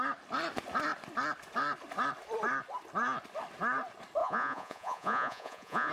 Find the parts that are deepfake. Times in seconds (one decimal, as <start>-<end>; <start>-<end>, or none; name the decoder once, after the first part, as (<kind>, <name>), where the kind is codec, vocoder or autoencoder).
4.2-5.9 (vocoder, Vocos)